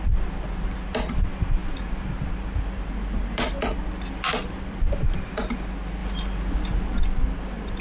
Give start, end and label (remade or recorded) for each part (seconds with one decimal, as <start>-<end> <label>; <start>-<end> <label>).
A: 0.0-7.8 recorded